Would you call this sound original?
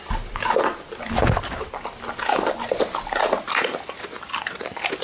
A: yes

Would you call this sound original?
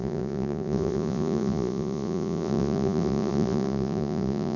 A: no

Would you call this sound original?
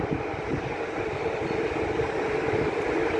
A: yes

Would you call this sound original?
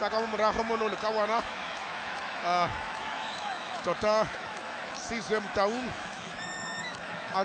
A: no